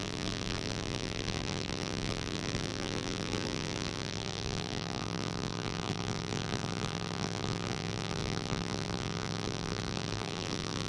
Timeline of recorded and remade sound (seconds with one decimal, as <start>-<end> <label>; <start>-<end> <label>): 0.0-10.9 remade